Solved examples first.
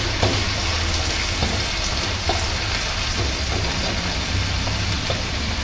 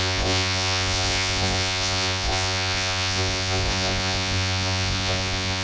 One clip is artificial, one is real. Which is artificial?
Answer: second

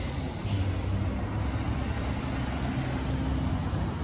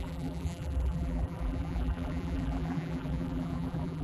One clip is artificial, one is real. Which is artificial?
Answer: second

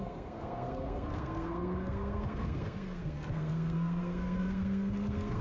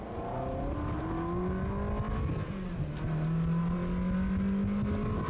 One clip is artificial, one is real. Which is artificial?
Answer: first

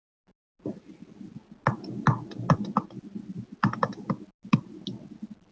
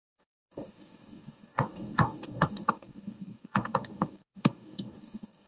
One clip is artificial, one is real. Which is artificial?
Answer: second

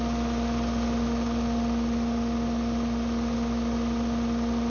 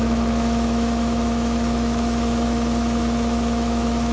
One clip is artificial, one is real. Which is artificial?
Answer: second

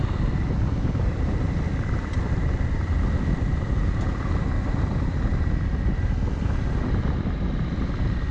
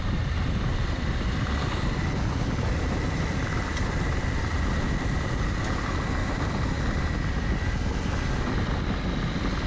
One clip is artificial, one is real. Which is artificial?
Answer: first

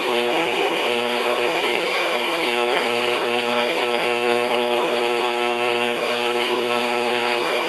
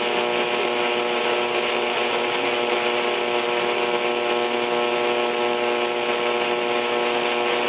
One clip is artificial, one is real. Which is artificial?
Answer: first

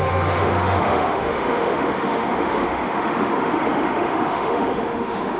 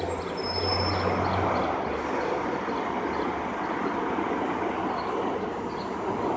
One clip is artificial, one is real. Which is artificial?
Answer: first